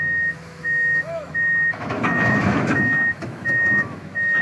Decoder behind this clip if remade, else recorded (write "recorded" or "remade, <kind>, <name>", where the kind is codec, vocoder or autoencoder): remade, autoencoder, DAC-VAE